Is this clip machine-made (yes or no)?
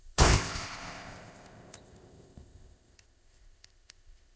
yes